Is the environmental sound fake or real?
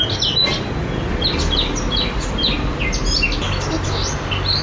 real